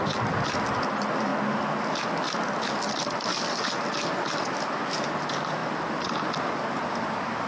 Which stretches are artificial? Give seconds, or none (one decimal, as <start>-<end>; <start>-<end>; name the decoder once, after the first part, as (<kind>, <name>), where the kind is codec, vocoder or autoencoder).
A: none